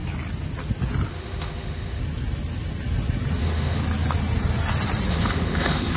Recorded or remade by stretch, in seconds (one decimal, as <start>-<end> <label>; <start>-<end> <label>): 0.0-1.1 recorded; 1.1-2.0 remade; 2.0-3.4 recorded; 3.4-3.8 remade; 3.8-5.1 recorded; 5.1-6.0 remade